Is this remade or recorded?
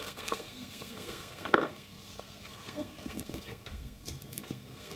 remade